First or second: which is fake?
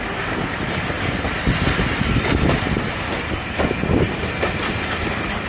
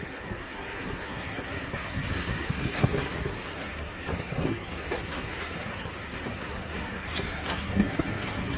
second